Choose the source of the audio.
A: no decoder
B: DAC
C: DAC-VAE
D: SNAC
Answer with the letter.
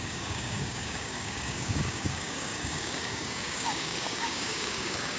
B